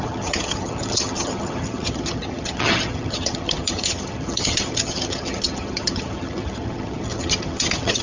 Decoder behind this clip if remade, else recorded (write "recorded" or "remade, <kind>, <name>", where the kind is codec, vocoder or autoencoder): remade, vocoder, HiFi-GAN